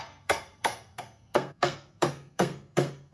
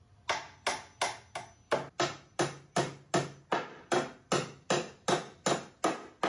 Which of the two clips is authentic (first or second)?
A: second